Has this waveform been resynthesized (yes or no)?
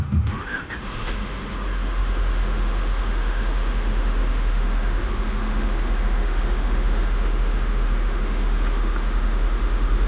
yes